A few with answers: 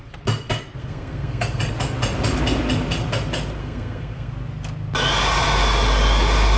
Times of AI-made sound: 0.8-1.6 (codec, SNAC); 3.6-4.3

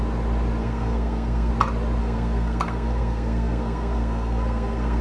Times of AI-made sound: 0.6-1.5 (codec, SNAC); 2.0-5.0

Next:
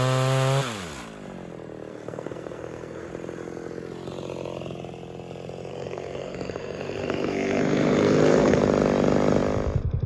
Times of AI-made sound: 1.9-3.1 (codec, SNAC); 5.7-8.6